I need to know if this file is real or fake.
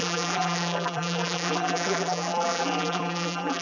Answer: fake